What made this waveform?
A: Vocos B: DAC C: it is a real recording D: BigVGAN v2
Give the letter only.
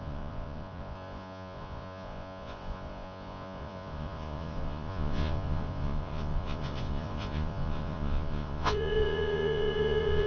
A